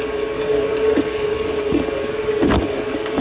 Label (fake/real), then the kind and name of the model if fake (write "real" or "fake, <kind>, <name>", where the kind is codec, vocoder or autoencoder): fake, codec, DAC